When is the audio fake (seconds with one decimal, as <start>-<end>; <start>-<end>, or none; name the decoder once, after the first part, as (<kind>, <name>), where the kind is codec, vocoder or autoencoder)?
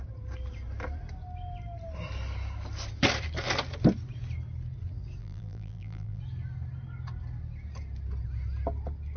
5.2-6.2 (vocoder, BigVGAN v2)